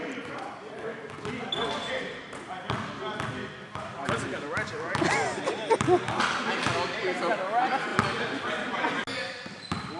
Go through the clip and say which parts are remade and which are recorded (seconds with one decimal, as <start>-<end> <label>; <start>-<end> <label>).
0.0-10.0 recorded